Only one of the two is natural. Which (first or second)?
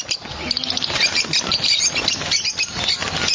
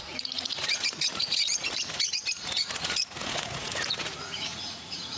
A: first